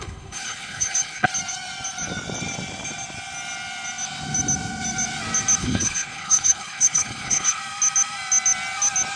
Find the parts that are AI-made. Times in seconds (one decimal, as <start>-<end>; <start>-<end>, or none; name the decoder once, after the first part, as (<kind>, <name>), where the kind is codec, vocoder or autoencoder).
0.0-1.3 (codec, HILCodec); 5.6-7.6